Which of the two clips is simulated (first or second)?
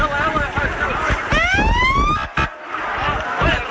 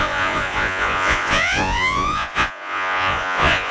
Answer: second